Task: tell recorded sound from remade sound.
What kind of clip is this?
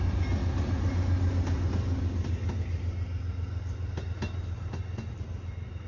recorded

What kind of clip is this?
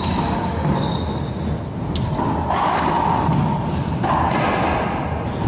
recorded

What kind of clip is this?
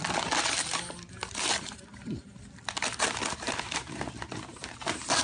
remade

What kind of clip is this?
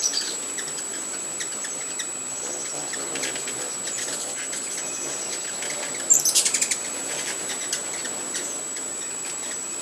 remade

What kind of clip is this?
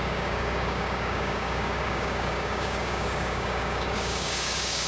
remade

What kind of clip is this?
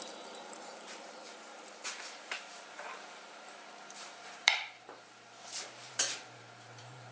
remade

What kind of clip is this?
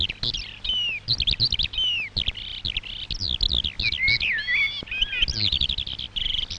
recorded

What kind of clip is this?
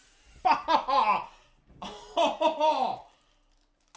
recorded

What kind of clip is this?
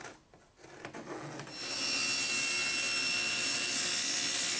recorded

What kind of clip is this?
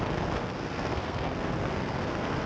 remade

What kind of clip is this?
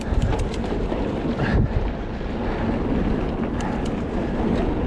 recorded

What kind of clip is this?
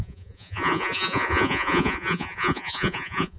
remade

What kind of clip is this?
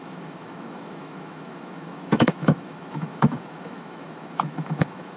remade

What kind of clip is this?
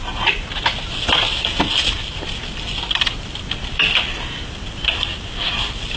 recorded